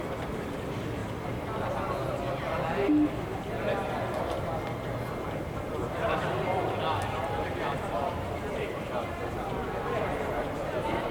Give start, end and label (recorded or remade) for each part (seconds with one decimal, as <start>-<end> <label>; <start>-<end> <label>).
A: 0.0-1.0 remade; 1.0-5.7 recorded; 5.7-9.6 remade; 9.6-10.6 recorded; 10.6-11.1 remade